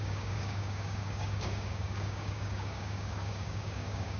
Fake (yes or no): yes